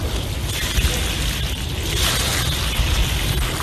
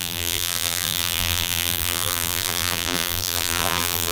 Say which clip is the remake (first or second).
second